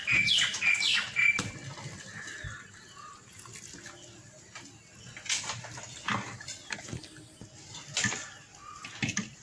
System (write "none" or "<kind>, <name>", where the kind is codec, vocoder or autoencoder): none